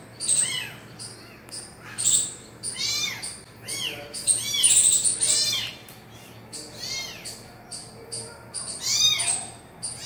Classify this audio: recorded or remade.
recorded